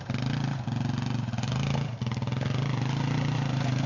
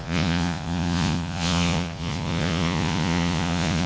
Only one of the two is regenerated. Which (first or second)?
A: second